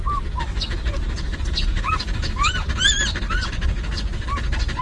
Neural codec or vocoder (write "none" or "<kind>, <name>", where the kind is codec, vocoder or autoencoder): none